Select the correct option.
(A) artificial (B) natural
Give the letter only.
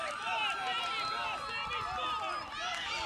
B